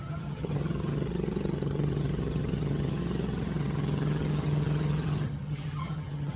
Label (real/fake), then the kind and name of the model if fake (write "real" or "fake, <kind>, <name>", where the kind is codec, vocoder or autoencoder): fake, vocoder, HiFi-GAN